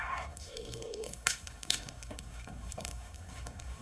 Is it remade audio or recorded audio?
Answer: remade